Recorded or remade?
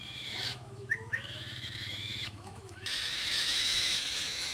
remade